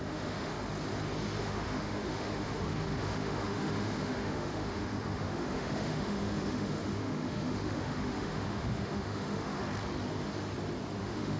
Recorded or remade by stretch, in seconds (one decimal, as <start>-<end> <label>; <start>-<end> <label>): 0.0-0.5 remade; 0.5-1.4 recorded; 1.4-9.6 remade; 9.6-11.0 recorded; 11.0-11.4 remade